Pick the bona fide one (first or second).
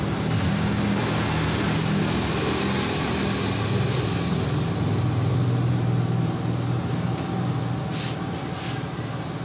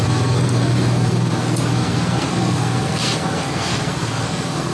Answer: first